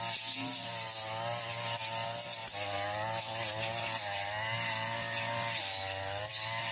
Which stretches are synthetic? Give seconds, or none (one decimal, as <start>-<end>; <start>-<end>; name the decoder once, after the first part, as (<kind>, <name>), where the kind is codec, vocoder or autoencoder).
none